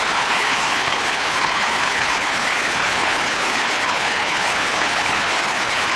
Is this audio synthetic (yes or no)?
yes